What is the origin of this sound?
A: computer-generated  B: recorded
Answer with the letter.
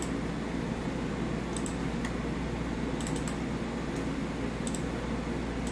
B